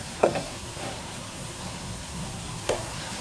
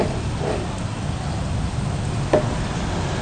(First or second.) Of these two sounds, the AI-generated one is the first